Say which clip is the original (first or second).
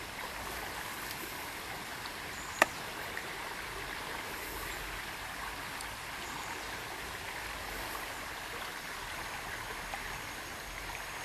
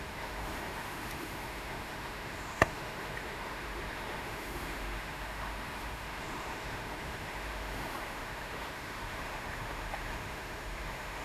first